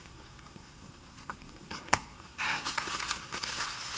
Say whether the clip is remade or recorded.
remade